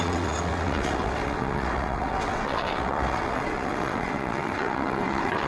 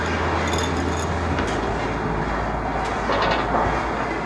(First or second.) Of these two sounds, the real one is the second